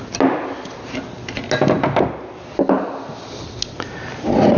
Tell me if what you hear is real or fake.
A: real